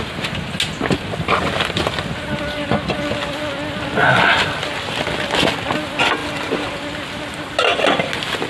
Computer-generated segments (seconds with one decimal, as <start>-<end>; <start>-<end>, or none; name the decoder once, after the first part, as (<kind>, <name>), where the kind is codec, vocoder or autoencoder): none